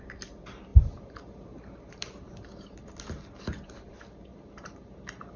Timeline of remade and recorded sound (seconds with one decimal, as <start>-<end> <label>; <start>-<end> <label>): 0.0-0.7 recorded; 0.7-3.0 remade; 3.0-4.3 recorded; 4.3-5.4 remade